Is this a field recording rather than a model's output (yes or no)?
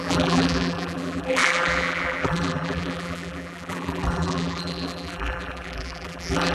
no